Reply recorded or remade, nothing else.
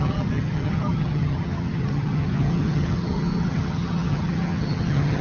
remade